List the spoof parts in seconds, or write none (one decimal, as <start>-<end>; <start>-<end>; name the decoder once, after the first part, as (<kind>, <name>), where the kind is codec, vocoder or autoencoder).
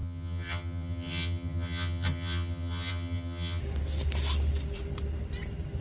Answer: 0.0-3.6 (vocoder, HiFi-GAN)